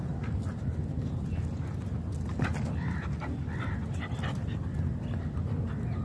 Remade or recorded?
recorded